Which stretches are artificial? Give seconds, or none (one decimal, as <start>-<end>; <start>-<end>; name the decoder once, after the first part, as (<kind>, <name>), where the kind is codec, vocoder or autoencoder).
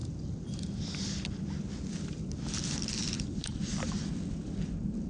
2.8-5.1 (vocoder, BigVGAN v2)